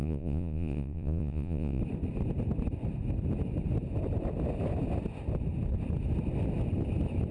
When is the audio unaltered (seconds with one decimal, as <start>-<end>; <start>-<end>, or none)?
1.8-7.3